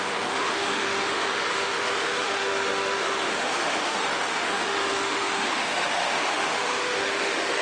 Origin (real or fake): fake